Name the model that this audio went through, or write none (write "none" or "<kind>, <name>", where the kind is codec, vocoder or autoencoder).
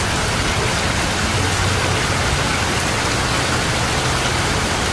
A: none